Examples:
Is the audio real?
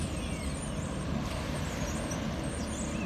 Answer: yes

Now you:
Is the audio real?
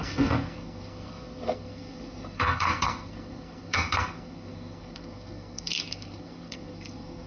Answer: no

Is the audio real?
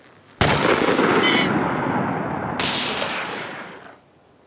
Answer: yes